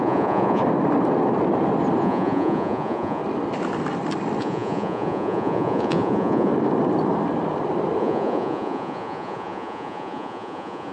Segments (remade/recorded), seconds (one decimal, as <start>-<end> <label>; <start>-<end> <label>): 0.0-0.6 remade; 0.6-2.0 recorded; 2.0-3.2 remade; 3.2-4.4 recorded; 4.4-6.5 remade; 6.5-8.0 recorded; 8.0-10.9 remade